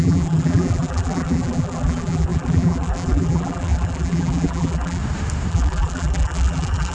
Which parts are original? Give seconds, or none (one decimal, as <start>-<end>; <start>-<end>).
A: 5.0-5.5